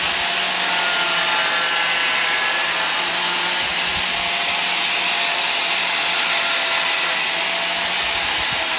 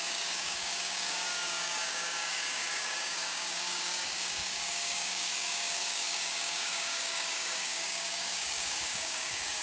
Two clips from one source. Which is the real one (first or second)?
first